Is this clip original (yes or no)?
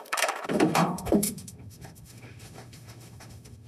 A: no